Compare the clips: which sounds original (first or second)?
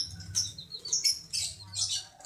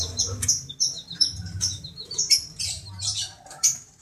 first